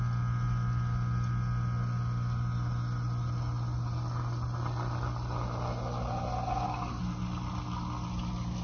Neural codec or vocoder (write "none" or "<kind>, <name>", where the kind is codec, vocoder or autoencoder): none